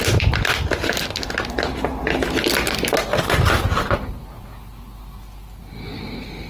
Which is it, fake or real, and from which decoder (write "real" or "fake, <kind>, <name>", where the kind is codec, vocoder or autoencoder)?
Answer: real